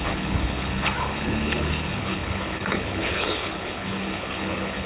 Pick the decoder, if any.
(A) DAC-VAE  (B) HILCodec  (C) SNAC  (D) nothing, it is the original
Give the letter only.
B